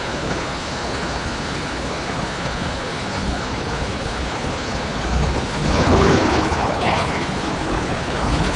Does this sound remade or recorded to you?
remade